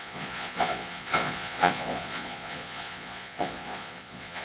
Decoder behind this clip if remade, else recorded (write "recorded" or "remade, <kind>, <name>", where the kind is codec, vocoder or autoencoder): remade, vocoder, Vocos